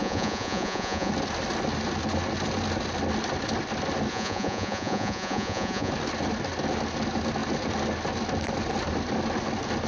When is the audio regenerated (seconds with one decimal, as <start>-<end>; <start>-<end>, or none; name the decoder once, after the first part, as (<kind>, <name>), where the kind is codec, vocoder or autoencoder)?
0.0-1.1 (vocoder, Vocos); 4.1-5.9

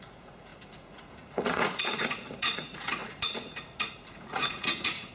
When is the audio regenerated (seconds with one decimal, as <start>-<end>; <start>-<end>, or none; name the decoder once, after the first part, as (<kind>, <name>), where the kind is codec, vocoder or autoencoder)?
0.0-5.1 (vocoder, Vocos)

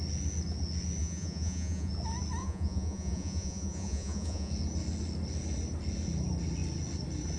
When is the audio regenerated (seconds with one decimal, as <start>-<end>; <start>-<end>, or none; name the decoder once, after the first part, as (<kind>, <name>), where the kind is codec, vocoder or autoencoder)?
1.0-1.9 (vocoder, Vocos); 2.4-4.5

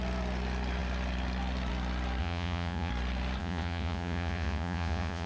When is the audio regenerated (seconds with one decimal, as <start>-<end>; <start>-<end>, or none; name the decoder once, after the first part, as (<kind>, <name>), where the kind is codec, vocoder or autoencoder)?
2.2-2.9 (vocoder, Vocos); 3.4-5.3

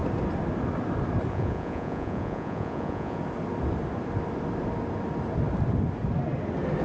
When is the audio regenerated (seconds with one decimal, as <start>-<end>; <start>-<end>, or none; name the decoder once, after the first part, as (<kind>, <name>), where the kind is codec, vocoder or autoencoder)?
1.3-3.2 (vocoder, Vocos)